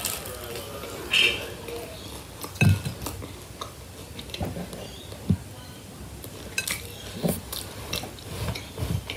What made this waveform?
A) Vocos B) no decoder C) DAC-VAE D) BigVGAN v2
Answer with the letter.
B